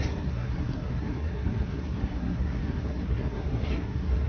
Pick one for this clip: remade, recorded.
remade